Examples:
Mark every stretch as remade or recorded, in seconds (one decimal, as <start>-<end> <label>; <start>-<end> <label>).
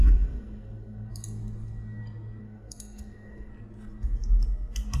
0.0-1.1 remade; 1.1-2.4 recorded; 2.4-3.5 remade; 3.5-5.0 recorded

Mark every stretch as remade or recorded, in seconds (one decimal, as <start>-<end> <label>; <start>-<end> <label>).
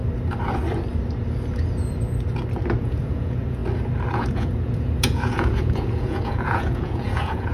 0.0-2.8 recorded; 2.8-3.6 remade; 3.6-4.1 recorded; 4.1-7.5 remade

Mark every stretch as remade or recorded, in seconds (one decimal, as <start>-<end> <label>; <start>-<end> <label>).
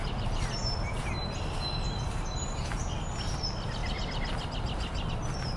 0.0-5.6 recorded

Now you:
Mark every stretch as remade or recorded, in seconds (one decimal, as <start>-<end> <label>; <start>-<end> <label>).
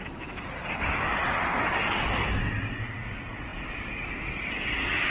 0.0-5.1 recorded